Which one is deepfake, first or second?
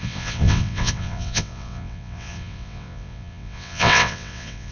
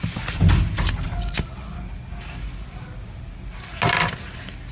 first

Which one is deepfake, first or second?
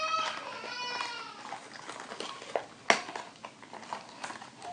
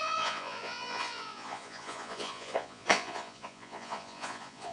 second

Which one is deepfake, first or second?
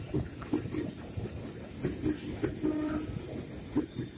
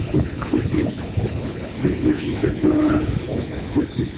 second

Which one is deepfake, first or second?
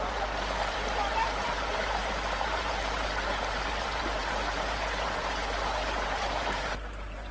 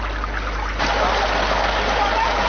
first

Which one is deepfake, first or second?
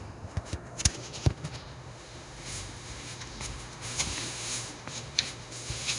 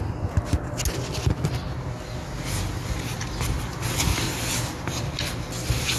first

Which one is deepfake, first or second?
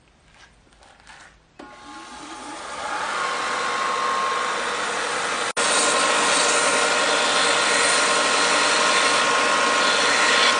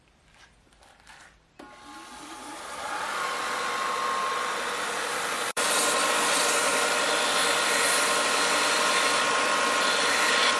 second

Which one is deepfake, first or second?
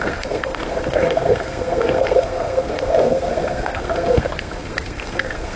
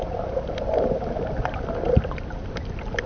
first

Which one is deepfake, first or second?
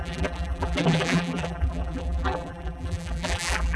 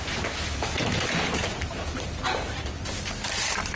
first